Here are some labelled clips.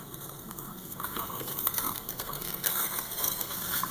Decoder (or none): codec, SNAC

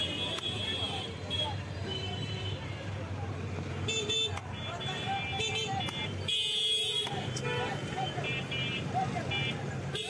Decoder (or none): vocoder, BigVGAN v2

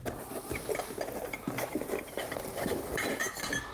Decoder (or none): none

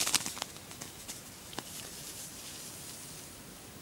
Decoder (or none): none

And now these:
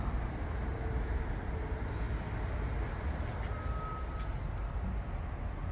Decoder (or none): none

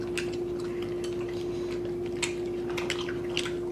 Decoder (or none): none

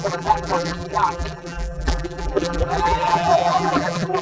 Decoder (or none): vocoder, BigVGAN v2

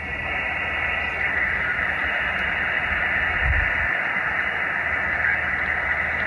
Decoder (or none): none